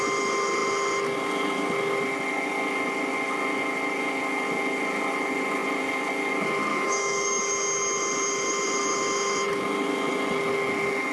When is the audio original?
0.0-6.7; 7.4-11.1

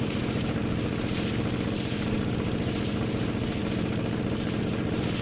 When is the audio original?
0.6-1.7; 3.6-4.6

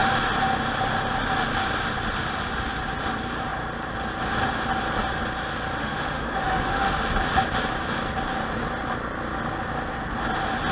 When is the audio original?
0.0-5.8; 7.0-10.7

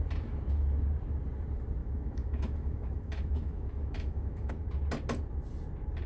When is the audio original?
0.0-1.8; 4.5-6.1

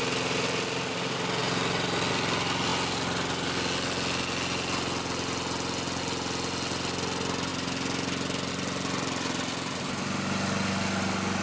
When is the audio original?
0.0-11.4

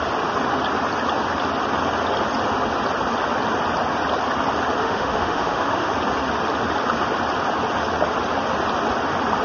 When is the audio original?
0.0-4.8; 5.9-9.4

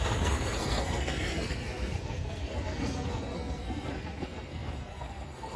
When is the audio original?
none

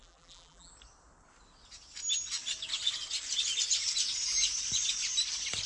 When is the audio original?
0.7-5.7